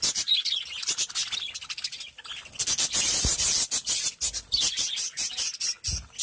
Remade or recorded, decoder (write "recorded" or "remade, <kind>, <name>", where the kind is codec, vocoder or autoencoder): recorded